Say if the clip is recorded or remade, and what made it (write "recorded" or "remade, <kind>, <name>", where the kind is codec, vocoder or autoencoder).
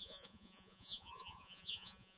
remade, vocoder, Vocos